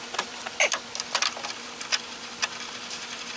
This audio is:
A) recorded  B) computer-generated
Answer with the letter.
B